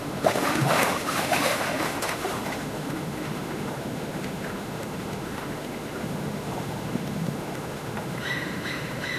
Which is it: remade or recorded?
remade